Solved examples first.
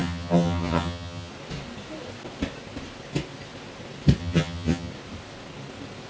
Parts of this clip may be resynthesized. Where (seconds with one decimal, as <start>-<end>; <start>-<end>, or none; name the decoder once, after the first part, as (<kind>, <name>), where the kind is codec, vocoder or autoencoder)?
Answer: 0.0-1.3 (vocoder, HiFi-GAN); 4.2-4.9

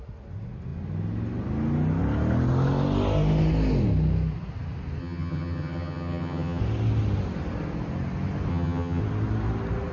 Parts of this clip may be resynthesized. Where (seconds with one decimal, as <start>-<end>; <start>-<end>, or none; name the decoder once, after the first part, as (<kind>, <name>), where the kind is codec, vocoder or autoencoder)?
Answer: 5.0-6.6 (vocoder, HiFi-GAN); 8.5-9.0

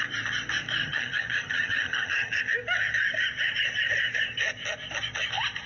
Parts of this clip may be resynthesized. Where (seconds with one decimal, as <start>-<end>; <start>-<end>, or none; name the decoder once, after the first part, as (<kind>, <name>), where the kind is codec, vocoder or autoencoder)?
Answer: 0.8-2.4 (vocoder, HiFi-GAN)

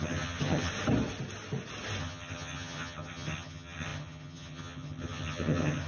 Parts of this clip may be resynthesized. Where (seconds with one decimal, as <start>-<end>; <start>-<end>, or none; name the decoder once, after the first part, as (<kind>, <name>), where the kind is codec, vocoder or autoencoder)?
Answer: 0.0-0.7 (vocoder, HiFi-GAN); 2.0-5.9

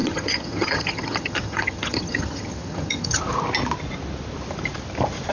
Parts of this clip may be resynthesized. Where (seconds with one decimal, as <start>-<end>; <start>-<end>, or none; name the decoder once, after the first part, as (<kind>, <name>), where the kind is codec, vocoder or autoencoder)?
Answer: 0.0-3.2 (vocoder, HiFi-GAN)